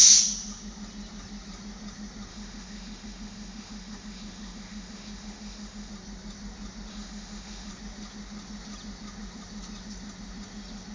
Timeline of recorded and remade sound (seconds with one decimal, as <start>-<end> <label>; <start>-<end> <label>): 0.0-2.3 recorded; 2.3-5.9 remade; 5.9-6.9 recorded; 6.9-7.7 remade; 7.7-10.9 recorded